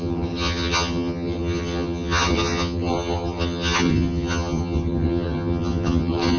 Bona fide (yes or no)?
no